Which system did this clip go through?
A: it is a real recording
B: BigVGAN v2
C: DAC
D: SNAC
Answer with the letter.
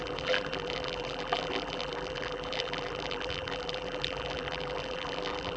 B